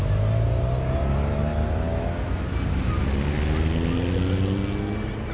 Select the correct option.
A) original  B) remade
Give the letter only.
A